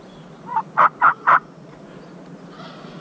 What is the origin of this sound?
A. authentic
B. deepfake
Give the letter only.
B